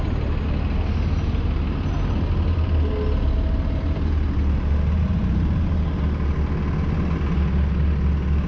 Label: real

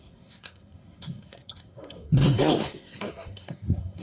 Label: fake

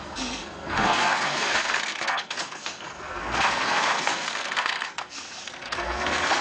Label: fake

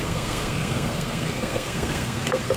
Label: fake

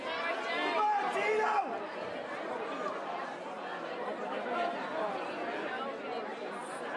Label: real